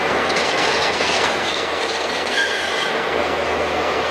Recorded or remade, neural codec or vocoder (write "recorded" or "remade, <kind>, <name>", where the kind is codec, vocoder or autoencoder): remade, codec, SNAC